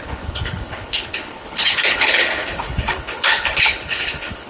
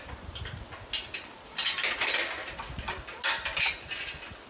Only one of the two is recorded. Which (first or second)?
second